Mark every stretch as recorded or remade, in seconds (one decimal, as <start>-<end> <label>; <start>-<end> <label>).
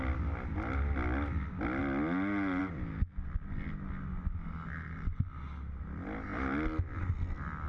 0.0-7.7 recorded